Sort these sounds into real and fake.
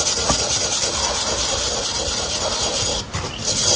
real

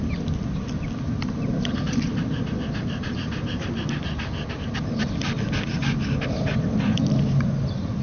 real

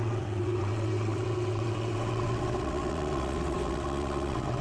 fake